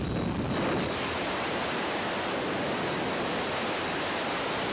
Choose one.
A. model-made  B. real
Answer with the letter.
B